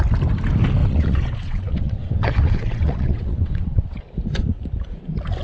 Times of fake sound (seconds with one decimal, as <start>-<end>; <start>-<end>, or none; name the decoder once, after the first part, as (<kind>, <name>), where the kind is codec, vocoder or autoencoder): 0.8-4.0 (vocoder, WaveNeXt)